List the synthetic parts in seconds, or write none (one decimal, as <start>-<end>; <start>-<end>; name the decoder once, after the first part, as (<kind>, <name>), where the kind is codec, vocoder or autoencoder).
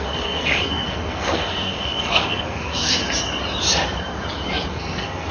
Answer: 0.0-3.0 (codec, SNAC); 4.7-5.3